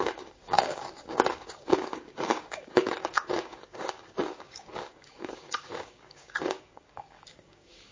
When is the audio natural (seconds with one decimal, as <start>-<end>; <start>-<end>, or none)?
none

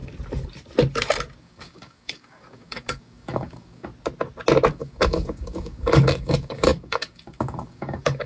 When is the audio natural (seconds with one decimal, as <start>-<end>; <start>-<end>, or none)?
0.0-1.4; 3.9-4.7

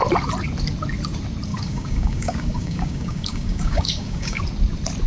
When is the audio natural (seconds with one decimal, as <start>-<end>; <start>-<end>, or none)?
0.0-1.5; 4.4-5.1

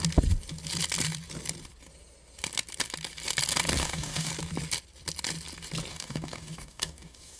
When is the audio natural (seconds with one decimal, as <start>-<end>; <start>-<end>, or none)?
0.0-3.8; 4.3-5.9

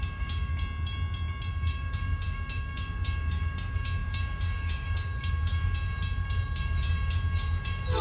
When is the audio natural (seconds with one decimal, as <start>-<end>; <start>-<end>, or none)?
0.5-1.5

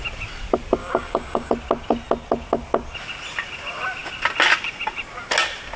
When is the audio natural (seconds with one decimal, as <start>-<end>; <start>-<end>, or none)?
0.0-0.8; 1.5-5.8

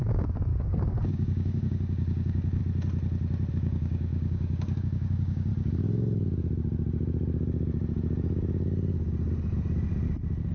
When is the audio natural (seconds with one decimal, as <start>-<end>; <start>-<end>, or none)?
2.6-3.5; 5.5-10.5